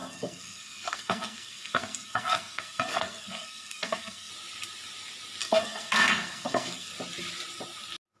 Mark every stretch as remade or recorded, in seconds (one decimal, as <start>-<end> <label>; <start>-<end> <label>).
0.0-4.3 remade; 4.3-5.4 recorded; 5.4-6.9 remade; 6.9-8.2 recorded